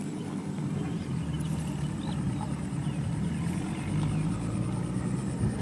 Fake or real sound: real